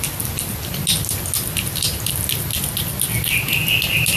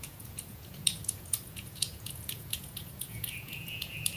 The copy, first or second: second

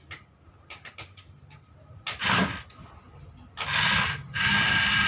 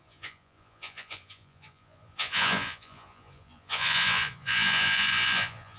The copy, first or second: second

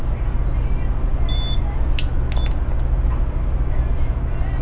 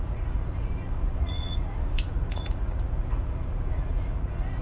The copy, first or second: second